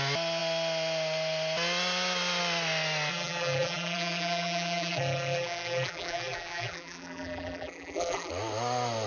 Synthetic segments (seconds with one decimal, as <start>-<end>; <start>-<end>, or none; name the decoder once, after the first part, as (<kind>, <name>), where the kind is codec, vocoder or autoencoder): 3.1-8.3 (vocoder, BigVGAN v2)